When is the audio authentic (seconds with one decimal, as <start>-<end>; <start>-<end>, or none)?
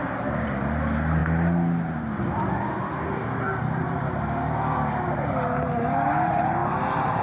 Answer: 0.0-7.2